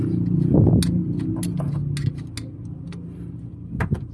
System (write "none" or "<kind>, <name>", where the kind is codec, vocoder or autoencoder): none